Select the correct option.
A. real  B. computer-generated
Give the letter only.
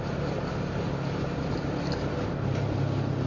A